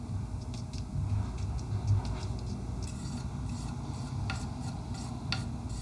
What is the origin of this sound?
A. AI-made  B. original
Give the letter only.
B